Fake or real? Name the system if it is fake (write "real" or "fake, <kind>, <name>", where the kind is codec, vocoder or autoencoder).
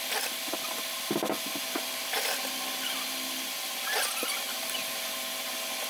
real